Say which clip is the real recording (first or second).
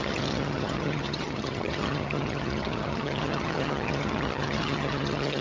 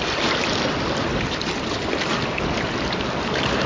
second